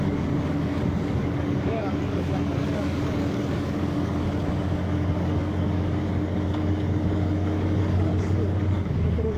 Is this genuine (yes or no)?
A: no